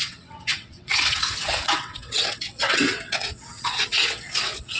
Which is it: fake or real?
fake